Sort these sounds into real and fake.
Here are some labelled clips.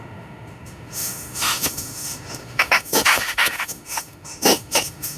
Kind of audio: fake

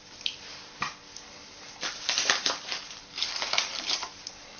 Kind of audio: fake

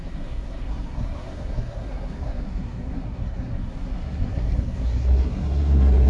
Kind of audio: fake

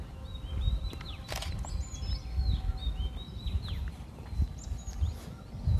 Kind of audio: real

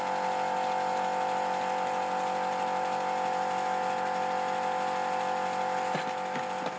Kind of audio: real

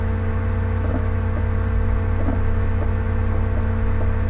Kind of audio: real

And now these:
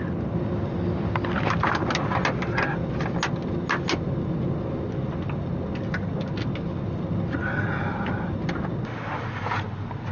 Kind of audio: real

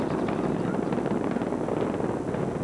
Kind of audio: real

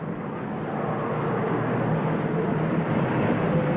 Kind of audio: real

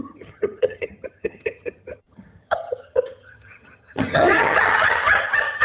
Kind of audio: fake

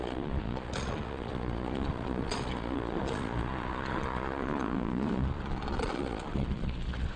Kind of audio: fake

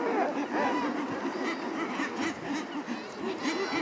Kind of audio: real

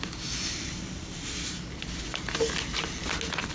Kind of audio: real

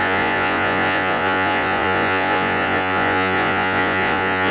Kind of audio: fake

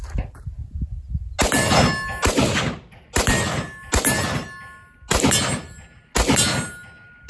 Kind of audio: real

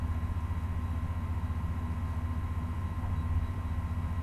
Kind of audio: real